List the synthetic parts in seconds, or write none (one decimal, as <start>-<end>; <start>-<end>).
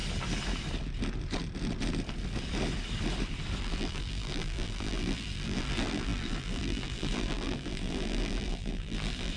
3.6-9.4